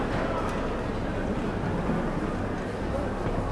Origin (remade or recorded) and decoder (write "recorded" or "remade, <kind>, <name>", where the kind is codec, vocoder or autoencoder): recorded